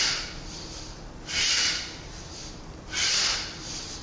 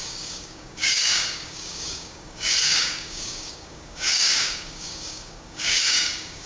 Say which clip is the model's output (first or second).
second